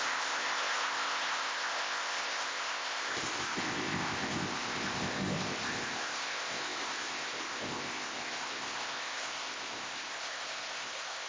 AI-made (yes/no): yes